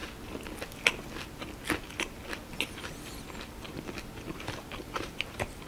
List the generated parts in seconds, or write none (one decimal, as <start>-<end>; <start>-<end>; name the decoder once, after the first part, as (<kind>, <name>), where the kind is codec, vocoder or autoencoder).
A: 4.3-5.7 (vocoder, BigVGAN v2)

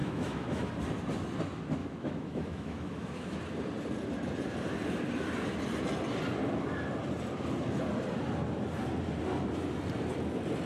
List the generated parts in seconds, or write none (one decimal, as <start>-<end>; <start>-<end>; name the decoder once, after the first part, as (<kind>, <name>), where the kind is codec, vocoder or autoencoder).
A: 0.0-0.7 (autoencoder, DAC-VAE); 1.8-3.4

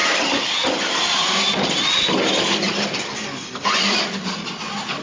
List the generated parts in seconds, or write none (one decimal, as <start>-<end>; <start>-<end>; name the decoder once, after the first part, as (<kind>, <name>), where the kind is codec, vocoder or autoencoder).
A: 0.0-1.4 (vocoder, BigVGAN v2)